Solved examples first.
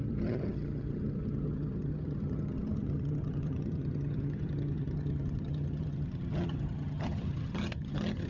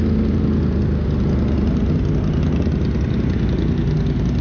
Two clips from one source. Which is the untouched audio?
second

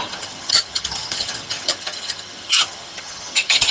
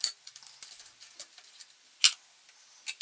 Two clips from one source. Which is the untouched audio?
second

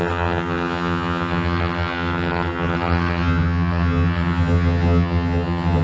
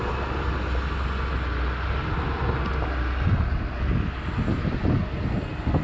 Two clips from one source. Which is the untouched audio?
second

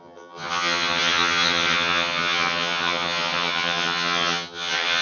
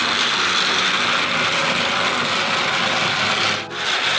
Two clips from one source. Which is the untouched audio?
second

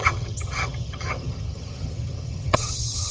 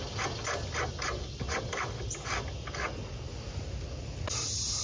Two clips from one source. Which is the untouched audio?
second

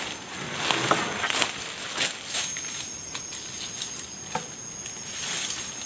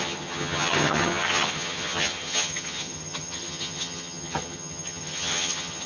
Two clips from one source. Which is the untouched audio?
first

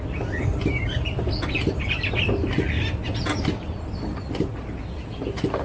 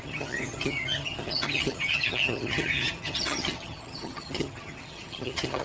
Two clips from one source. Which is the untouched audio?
first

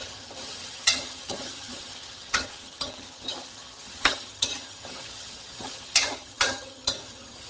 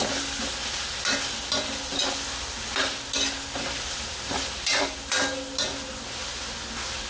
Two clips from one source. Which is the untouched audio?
second